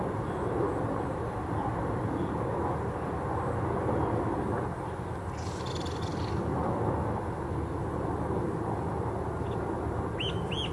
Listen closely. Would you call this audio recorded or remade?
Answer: recorded